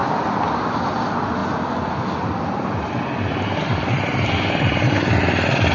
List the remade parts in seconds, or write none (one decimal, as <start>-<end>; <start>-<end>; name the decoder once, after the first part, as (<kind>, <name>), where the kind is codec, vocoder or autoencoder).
none